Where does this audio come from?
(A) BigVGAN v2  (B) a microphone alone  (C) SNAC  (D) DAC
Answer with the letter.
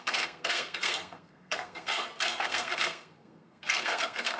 C